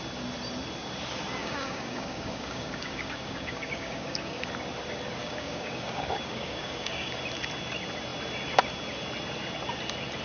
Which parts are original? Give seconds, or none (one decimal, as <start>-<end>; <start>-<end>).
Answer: 0.0-1.4; 4.4-5.2; 7.2-10.2

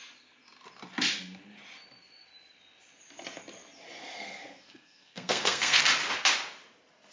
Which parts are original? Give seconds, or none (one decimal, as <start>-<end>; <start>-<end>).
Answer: 0.0-4.0; 5.8-7.1

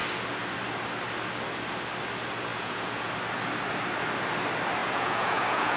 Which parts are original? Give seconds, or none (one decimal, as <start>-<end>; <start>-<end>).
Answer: 0.0-2.5; 3.1-4.8